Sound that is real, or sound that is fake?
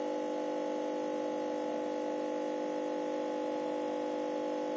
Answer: real